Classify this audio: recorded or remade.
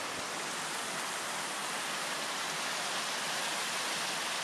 recorded